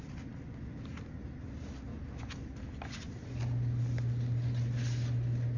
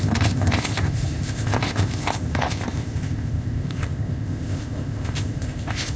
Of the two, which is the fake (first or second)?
second